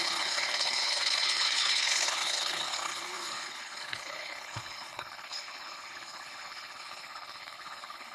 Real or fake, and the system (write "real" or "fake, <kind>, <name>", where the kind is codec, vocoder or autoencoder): fake, codec, HILCodec